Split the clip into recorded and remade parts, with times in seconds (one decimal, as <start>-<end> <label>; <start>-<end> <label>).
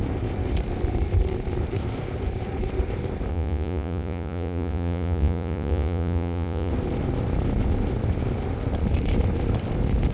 0.0-3.3 recorded; 3.3-6.7 remade; 6.7-10.1 recorded